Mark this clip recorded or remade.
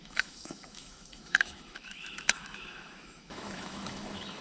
remade